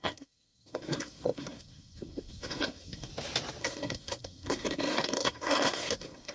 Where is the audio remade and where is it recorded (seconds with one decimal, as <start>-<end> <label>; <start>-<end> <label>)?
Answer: 0.0-3.1 remade; 3.1-3.6 recorded; 3.6-6.3 remade